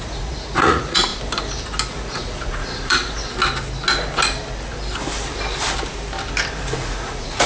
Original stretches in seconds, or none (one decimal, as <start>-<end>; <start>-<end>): 1.1-1.9; 3.0-6.8

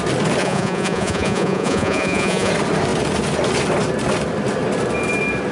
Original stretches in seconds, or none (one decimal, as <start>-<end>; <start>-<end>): 0.0-0.4; 2.5-5.5

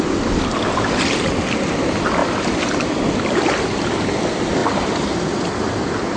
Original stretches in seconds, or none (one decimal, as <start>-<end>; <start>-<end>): 0.0-6.2

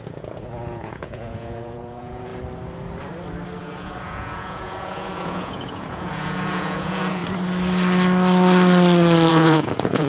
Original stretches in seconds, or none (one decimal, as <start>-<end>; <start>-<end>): 2.3-3.6; 7.2-9.3

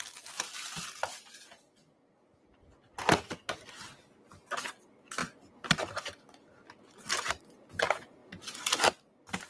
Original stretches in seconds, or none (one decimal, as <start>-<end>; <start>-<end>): 0.0-9.5

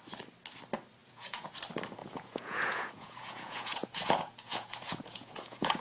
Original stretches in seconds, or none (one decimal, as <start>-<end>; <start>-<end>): 0.0-1.0; 1.5-2.0

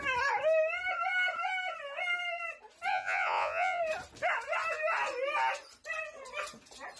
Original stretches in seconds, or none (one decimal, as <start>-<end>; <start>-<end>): 0.0-2.9; 3.8-7.0